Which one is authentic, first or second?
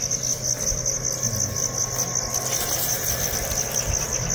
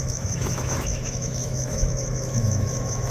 first